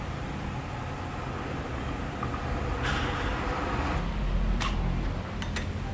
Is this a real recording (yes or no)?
yes